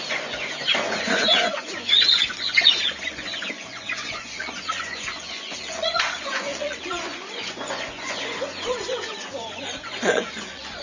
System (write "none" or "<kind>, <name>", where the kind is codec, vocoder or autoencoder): vocoder, Vocos